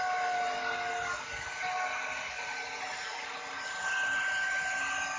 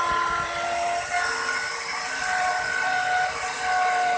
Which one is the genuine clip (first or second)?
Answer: first